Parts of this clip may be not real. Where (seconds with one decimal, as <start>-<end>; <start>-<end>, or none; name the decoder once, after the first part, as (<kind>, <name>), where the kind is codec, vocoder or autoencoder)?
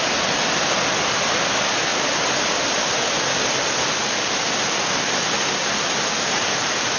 none